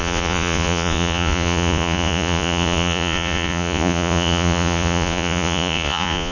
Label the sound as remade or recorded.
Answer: remade